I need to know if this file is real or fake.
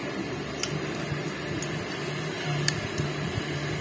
real